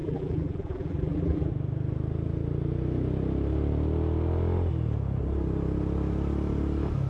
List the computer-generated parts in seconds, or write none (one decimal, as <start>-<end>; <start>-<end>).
0.0-1.5